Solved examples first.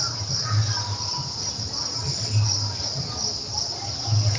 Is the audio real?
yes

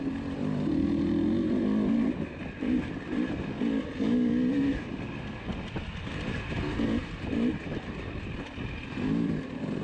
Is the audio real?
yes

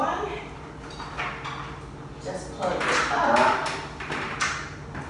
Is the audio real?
yes